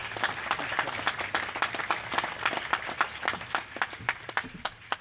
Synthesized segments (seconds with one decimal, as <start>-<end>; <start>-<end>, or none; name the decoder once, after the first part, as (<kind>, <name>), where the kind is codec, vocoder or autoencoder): none